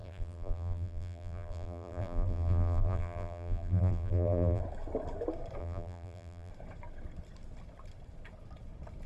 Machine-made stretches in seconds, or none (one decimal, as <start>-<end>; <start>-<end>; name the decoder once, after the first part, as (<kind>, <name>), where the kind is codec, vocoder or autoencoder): 0.0-4.6 (vocoder, BigVGAN v2); 5.6-6.5